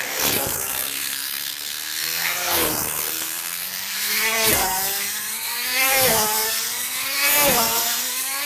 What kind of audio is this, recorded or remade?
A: remade